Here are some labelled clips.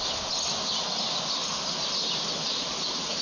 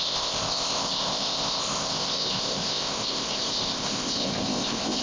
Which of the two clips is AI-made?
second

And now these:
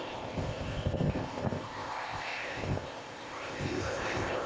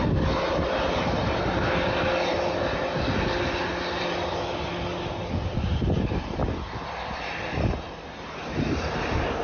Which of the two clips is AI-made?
first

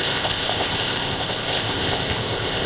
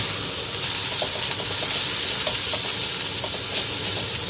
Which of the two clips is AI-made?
first